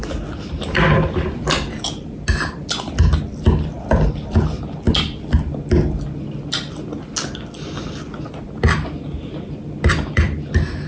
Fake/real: real